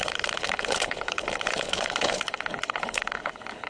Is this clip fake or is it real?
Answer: fake